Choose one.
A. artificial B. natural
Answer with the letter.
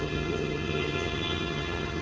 A